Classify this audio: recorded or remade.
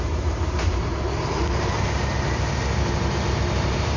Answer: remade